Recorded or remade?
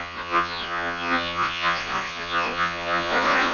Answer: remade